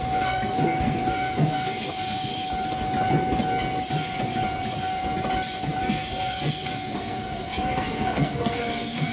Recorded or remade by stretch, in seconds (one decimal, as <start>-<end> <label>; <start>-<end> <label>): 0.0-2.3 remade; 2.3-5.8 recorded; 5.8-9.1 remade